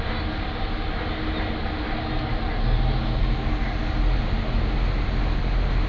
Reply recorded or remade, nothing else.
recorded